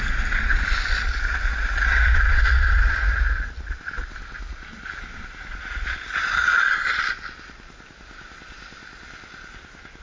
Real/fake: real